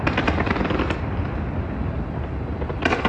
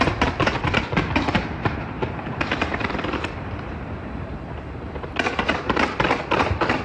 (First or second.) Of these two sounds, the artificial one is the second